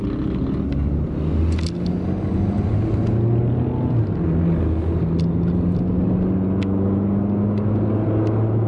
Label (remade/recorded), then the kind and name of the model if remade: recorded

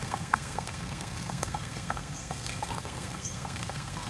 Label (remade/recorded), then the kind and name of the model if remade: remade, codec, SNAC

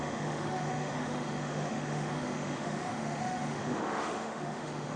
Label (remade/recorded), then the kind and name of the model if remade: remade, autoencoder, DAC-VAE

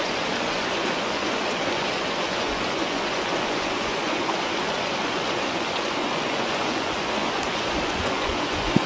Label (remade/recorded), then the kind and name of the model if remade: remade, vocoder, Vocos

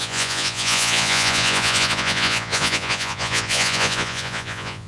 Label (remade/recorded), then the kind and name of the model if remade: remade, vocoder, Vocos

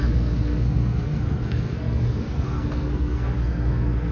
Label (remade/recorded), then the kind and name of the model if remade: remade, codec, SNAC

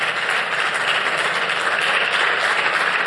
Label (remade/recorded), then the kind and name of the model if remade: recorded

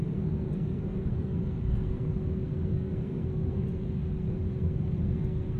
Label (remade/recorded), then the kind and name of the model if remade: remade, codec, SNAC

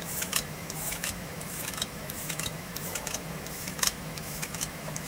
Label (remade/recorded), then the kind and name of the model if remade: remade, autoencoder, DAC-VAE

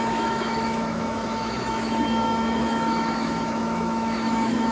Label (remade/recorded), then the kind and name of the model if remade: remade, autoencoder, DAC-VAE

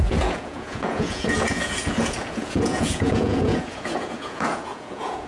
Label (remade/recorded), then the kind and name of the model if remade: remade, vocoder, Vocos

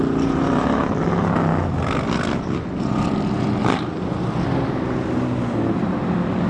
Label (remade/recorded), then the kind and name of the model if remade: recorded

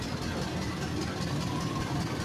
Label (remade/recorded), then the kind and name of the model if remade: recorded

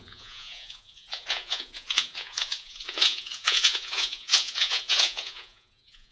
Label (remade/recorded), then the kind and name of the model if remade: remade, vocoder, Vocos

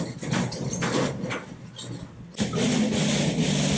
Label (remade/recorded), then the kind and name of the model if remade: recorded